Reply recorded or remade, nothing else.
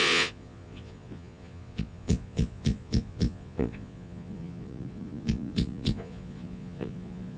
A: remade